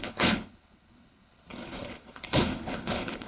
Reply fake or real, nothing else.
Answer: fake